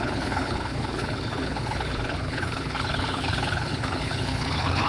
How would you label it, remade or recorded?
remade